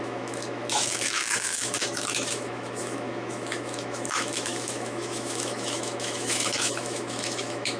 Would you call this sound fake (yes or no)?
yes